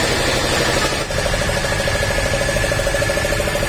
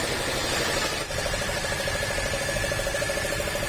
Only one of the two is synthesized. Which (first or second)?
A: second